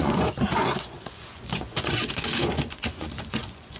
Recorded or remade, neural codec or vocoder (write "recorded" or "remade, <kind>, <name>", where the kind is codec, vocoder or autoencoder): remade, vocoder, Vocos